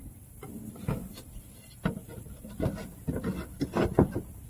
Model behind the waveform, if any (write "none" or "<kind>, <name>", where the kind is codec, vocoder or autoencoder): none